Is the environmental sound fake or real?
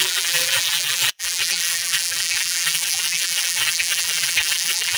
fake